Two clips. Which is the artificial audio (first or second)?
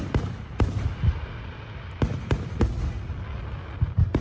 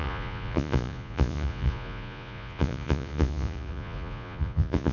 second